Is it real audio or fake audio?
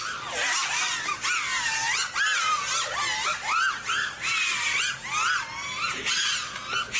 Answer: real